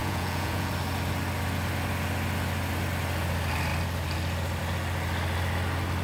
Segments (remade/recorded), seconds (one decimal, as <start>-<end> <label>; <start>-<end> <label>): 0.0-0.7 remade; 0.7-6.0 recorded